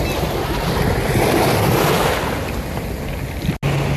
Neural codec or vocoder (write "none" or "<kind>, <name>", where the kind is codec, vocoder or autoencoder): none